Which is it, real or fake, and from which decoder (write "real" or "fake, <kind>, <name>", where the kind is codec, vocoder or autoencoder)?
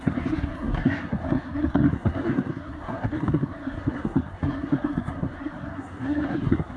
fake, codec, SNAC